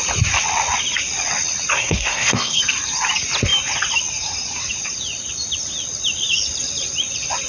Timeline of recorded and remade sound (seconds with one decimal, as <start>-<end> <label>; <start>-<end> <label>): 0.0-1.7 recorded; 1.7-2.6 remade; 2.6-7.5 recorded